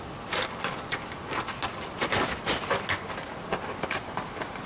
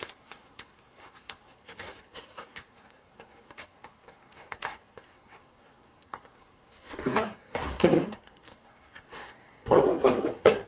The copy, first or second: second